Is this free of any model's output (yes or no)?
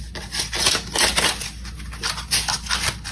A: yes